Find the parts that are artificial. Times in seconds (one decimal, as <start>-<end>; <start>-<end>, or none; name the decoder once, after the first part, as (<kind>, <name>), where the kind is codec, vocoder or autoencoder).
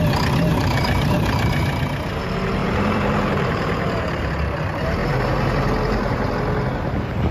0.5-1.6 (vocoder, BigVGAN v2); 2.6-4.3; 5.0-6.3